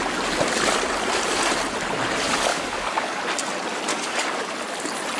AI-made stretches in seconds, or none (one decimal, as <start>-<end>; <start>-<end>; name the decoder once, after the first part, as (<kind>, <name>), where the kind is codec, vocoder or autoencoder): 2.5-3.2 (codec, DAC); 3.9-4.5